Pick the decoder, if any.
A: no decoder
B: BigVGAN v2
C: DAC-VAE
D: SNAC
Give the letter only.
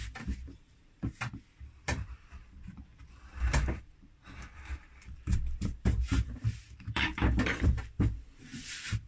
B